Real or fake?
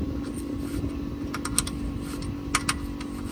real